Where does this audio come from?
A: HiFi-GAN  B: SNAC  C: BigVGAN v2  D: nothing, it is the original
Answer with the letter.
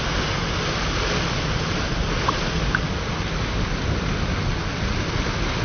D